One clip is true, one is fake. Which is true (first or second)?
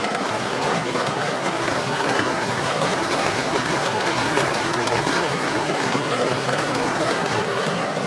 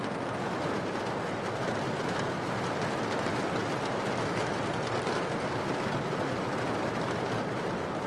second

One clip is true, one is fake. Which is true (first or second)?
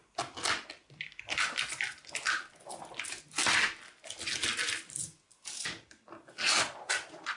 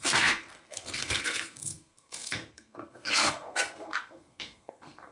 first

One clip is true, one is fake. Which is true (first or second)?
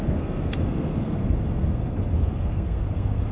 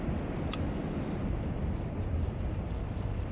second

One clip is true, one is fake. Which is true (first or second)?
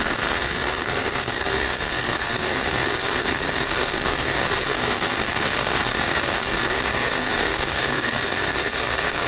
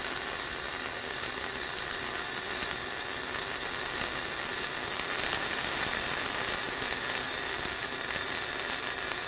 second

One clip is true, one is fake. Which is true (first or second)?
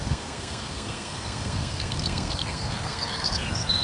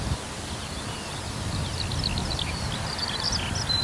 second